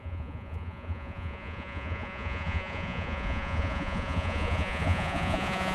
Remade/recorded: remade